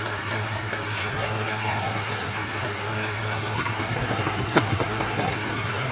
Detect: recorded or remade remade